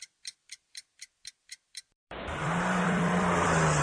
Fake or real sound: fake